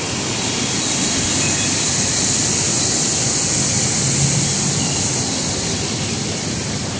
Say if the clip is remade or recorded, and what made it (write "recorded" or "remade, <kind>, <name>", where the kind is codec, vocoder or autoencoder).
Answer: recorded